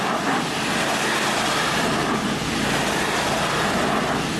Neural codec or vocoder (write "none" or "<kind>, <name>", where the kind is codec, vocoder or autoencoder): none